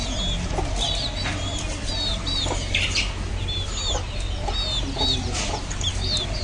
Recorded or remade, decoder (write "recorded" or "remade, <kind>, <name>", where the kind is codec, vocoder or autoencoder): recorded